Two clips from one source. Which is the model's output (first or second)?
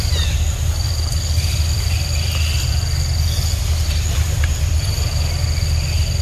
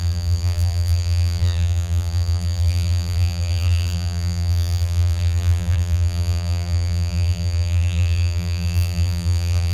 second